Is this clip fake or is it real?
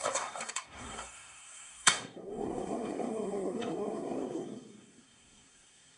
fake